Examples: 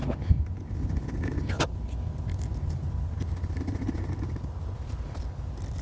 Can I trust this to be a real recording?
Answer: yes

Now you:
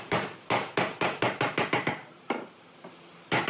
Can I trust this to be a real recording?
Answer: yes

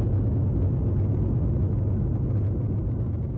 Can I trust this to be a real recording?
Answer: yes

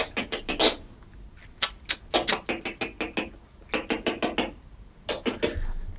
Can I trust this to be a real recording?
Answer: yes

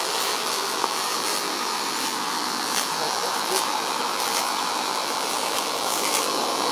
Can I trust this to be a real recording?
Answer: no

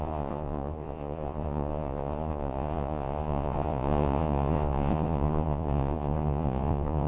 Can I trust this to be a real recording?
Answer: no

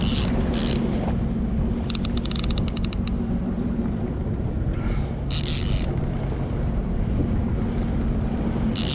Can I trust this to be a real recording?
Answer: yes